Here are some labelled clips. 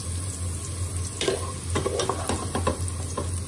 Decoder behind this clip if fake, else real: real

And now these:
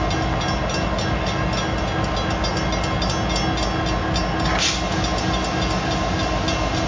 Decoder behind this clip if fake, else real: real